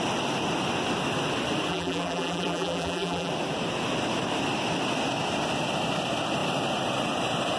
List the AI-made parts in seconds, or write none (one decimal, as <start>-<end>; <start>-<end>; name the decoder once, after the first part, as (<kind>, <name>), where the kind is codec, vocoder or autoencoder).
1.7-3.3 (vocoder, BigVGAN v2)